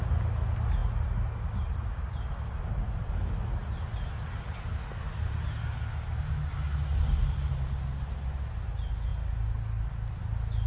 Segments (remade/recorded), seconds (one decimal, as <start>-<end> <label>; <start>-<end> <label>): 0.0-10.7 recorded